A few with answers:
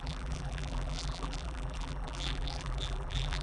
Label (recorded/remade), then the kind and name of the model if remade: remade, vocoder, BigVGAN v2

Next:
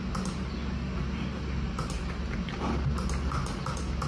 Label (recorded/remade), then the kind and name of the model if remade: recorded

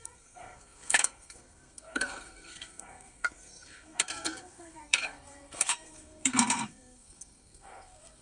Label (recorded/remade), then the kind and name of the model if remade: remade, codec, SNAC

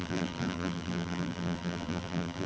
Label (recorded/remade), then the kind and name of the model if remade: remade, vocoder, BigVGAN v2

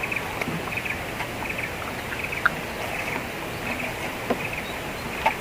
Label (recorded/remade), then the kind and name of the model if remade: recorded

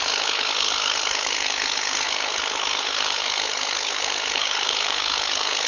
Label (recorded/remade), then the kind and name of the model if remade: remade, codec, HILCodec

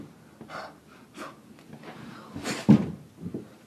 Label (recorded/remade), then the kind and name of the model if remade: recorded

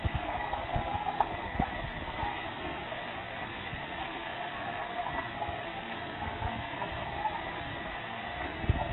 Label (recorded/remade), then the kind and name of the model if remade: remade, codec, SNAC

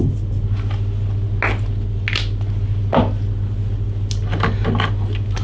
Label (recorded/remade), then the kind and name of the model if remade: recorded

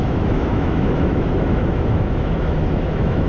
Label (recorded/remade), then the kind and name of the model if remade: remade, autoencoder, DAC-VAE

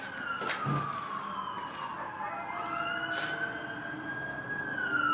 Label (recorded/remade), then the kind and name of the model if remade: recorded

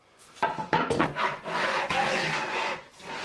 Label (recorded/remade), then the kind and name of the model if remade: remade, vocoder, Vocos